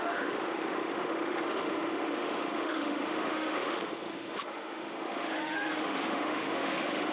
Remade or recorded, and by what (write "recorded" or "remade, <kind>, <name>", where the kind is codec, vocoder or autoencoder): remade, autoencoder, DAC-VAE